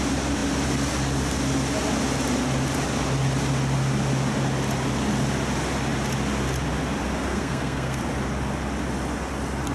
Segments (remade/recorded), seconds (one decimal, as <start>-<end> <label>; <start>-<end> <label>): 0.0-7.3 recorded; 7.3-8.0 remade; 8.0-9.7 recorded